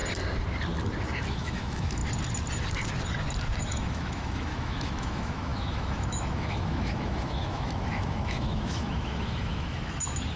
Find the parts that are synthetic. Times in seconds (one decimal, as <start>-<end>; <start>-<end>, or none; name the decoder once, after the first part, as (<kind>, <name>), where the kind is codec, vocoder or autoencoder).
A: 1.3-2.0 (autoencoder, DAC-VAE); 3.6-10.4